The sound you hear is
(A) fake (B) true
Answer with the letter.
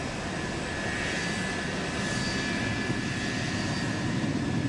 B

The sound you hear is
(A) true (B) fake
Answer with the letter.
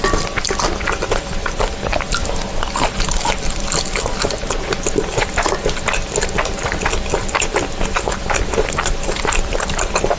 A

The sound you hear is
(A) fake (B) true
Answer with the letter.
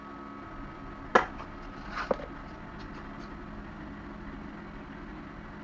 B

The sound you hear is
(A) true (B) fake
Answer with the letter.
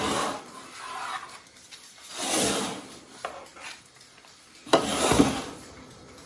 B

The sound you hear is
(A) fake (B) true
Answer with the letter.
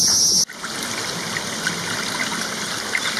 B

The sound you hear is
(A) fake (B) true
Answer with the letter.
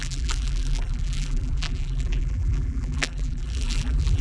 A